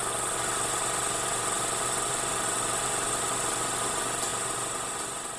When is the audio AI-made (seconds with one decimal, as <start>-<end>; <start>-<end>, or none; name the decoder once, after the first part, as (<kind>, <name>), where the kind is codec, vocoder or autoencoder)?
2.1-3.9 (vocoder, BigVGAN v2); 4.3-5.4